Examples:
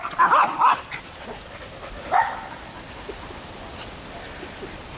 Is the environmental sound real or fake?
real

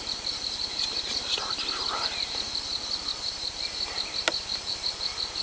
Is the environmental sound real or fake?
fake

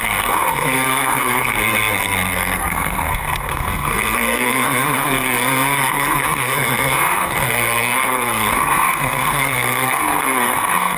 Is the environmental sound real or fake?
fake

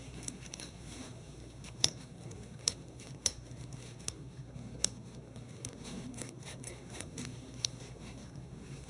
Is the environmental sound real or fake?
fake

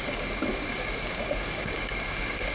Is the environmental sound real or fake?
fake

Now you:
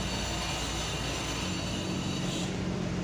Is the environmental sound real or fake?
real